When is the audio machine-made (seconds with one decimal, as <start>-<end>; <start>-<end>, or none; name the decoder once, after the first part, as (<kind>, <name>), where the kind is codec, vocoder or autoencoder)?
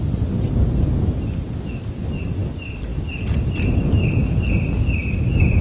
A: none